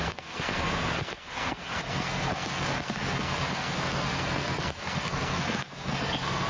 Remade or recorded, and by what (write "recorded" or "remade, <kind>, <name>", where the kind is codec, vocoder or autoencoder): remade, codec, SNAC